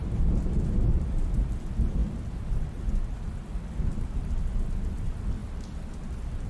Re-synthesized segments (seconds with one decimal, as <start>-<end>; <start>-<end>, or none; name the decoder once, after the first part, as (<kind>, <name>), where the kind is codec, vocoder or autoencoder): none